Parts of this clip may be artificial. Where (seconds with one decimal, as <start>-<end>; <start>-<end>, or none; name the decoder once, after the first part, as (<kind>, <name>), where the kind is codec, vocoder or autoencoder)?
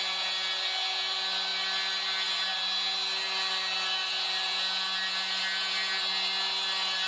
none